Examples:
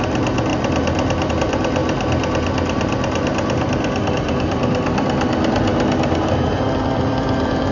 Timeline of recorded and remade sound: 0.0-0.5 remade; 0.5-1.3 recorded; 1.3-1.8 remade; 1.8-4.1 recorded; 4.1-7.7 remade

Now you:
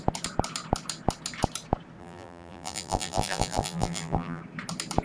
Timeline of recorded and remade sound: 0.0-2.0 recorded; 2.0-4.4 remade; 4.4-5.0 recorded

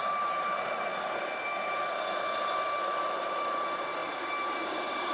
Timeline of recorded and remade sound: 0.0-0.9 remade; 0.9-3.1 recorded; 3.1-4.0 remade; 4.0-4.5 recorded; 4.5-5.1 remade

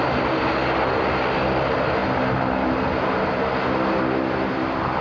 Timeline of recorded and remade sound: 0.0-5.0 recorded

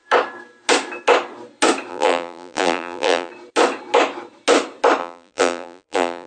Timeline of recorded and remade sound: 0.0-1.9 recorded; 1.9-3.3 remade; 3.3-5.0 recorded; 5.0-6.3 remade